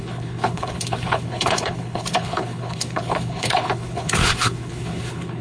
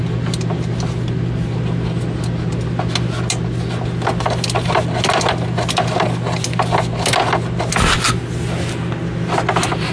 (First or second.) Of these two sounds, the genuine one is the second